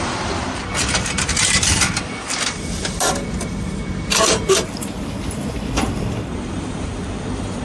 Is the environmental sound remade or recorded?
remade